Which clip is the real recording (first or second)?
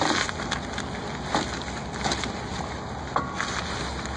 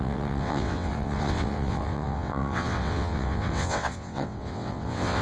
first